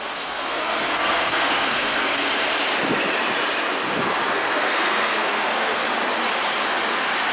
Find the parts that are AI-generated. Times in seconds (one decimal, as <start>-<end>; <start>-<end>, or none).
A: 0.0-2.1; 4.3-5.8